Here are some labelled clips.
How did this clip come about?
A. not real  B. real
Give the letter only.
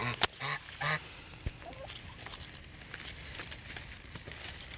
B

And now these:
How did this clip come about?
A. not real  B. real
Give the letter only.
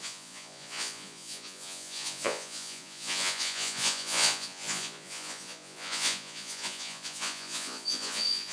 A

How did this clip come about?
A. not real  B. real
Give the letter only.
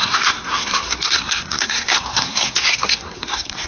A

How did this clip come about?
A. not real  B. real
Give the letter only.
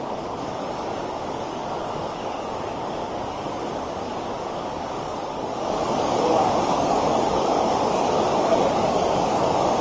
A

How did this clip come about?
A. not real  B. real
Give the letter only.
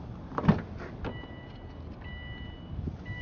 B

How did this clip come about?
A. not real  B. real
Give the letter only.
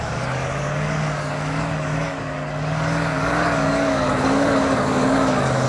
A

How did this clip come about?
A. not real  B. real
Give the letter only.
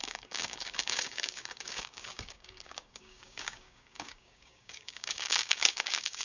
A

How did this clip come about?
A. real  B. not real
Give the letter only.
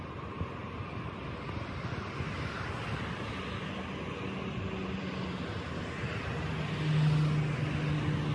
A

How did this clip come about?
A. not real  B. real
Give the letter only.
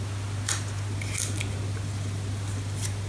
B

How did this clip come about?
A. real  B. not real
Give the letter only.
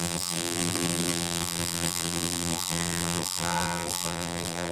B